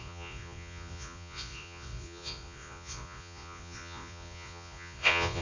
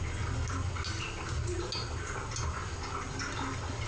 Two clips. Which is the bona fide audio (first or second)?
second